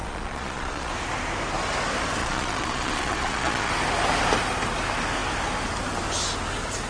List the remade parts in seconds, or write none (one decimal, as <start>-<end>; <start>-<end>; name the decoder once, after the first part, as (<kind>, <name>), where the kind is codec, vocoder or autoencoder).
0.0-0.9 (vocoder, Vocos); 2.2-3.7